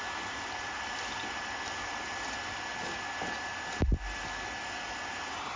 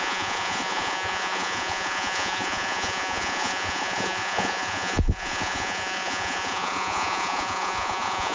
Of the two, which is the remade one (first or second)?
second